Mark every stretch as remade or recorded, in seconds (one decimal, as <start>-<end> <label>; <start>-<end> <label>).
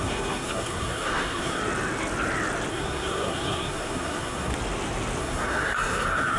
0.0-1.6 remade; 1.6-2.7 recorded; 2.7-4.5 remade; 4.5-5.2 recorded; 5.2-6.4 remade